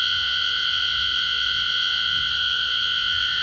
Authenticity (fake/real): fake